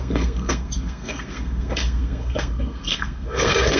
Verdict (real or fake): fake